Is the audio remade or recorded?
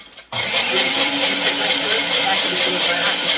remade